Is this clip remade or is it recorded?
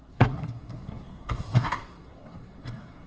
remade